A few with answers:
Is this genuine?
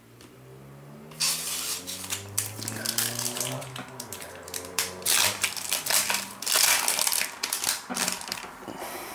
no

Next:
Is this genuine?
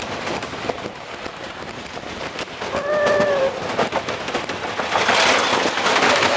yes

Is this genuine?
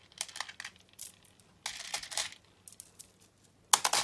yes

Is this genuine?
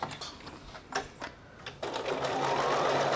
yes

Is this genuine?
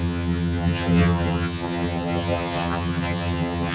no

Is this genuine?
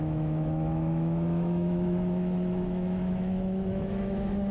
no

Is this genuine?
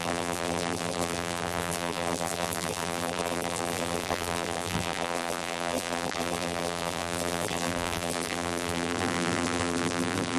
no